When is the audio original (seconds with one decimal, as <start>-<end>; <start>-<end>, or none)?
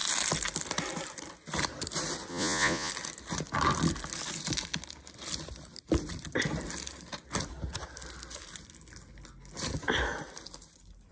0.0-2.3; 2.9-11.1